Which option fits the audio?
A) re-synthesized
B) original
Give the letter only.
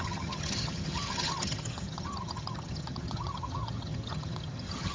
A